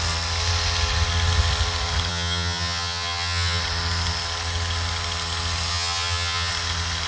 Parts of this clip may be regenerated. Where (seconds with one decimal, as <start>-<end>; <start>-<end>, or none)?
2.1-3.6; 5.7-6.5